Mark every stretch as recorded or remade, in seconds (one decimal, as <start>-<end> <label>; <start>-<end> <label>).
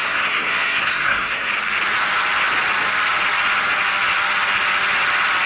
0.0-1.5 remade; 1.5-5.5 recorded